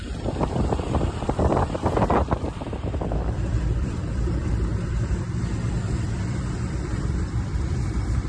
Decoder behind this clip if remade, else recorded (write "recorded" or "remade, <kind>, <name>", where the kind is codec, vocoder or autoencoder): remade, vocoder, BigVGAN v2